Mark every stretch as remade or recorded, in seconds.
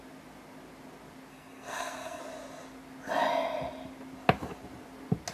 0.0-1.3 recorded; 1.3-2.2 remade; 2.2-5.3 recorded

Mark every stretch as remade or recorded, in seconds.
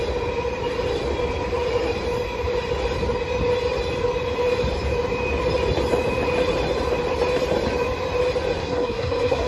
0.0-8.6 recorded; 8.6-9.5 remade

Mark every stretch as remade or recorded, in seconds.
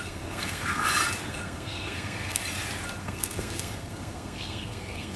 0.0-0.8 remade; 0.8-1.3 recorded; 1.3-2.4 remade; 2.4-3.0 recorded; 3.0-5.2 remade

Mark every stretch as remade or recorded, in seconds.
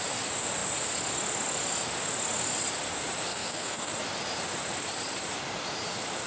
0.0-3.3 recorded; 3.3-3.9 remade; 3.9-6.3 recorded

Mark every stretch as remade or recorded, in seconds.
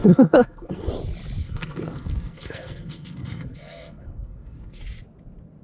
0.0-0.9 remade; 0.9-1.4 recorded; 1.4-4.8 remade; 4.8-5.6 recorded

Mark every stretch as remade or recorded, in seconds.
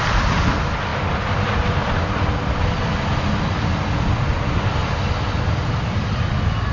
0.0-6.7 recorded